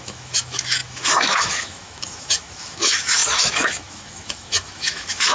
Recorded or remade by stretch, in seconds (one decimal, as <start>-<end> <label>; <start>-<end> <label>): 0.0-5.3 remade